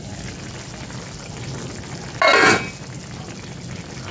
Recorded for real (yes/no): yes